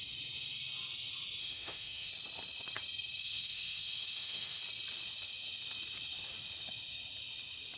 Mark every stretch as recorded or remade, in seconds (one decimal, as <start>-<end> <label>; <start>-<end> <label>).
0.0-1.4 recorded; 1.4-2.1 remade; 2.1-3.2 recorded; 3.2-4.6 remade; 4.6-7.8 recorded